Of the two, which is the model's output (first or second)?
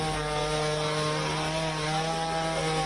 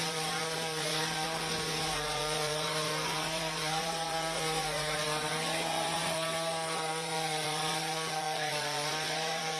second